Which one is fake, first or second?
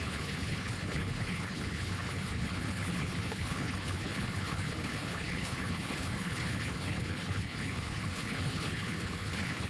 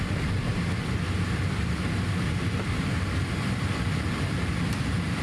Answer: first